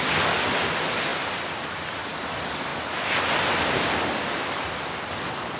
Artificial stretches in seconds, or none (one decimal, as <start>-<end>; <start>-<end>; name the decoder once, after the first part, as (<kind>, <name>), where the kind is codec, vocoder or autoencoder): 1.1-2.0 (vocoder, BigVGAN v2)